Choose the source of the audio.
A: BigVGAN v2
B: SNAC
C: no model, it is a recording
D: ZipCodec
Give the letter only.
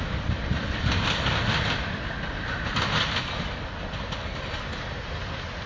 C